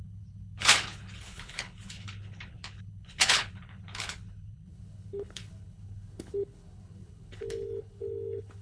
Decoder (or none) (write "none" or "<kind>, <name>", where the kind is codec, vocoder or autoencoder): codec, HILCodec